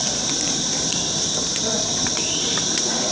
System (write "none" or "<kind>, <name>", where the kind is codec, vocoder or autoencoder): vocoder, BigVGAN v2